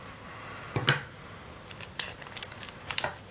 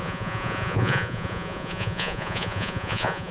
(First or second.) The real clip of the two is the first